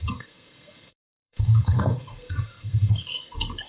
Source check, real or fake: fake